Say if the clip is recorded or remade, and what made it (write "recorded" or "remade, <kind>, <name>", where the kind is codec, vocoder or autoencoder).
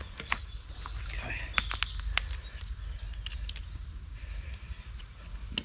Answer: recorded